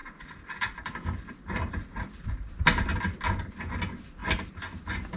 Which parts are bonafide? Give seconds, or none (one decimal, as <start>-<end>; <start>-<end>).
3.0-5.2